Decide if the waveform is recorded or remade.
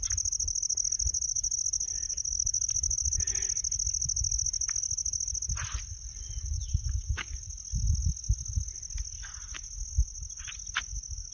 recorded